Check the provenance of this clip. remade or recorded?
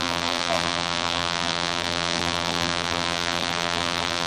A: remade